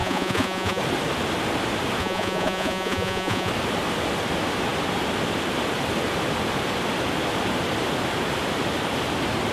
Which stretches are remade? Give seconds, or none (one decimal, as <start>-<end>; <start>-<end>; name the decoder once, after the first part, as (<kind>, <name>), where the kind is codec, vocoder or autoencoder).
0.0-0.8 (vocoder, Vocos); 2.0-3.5